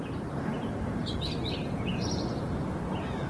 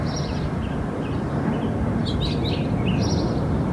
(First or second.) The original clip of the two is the second